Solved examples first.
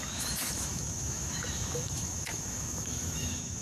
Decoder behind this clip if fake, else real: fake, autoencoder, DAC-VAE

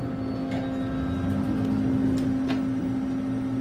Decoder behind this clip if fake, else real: real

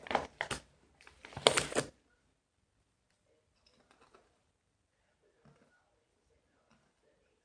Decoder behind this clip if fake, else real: real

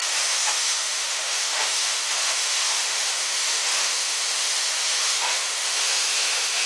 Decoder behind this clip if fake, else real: fake, autoencoder, DAC-VAE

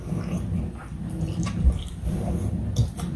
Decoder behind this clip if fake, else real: real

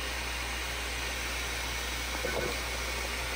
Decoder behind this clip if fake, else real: real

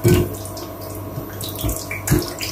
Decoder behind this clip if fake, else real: real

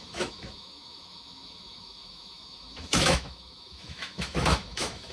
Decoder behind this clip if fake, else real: fake, autoencoder, DAC-VAE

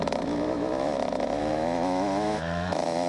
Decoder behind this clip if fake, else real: fake, autoencoder, DAC-VAE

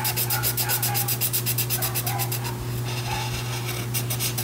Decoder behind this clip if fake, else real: real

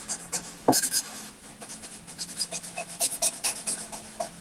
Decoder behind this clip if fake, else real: fake, autoencoder, DAC-VAE